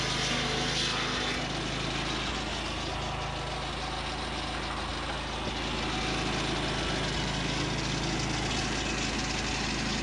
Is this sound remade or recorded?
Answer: recorded